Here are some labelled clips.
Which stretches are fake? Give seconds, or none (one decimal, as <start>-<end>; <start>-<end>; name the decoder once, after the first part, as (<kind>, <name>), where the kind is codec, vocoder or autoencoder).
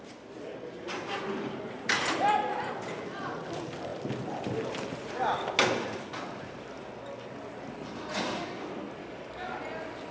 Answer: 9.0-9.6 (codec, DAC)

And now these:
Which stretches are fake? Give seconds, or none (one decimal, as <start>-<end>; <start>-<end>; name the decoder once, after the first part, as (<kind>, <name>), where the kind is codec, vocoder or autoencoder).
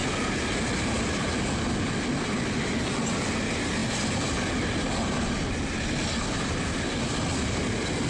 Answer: none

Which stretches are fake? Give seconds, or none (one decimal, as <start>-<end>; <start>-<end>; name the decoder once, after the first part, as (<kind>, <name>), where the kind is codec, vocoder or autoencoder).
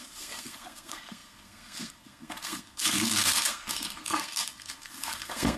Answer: 0.0-5.6 (codec, SNAC)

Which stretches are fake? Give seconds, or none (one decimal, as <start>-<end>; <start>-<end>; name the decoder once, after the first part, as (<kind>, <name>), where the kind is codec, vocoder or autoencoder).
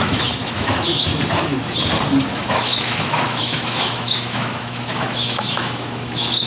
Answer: 0.0-1.1 (autoencoder, DAC-VAE); 2.3-6.5